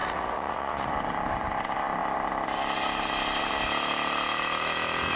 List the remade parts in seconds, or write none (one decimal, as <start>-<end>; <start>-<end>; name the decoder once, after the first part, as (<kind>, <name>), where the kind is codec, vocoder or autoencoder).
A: 0.0-0.9 (vocoder, Vocos)